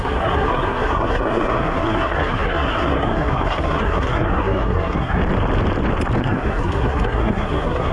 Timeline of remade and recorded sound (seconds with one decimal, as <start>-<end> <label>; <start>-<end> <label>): 0.0-5.2 remade; 5.2-6.2 recorded; 6.2-7.9 remade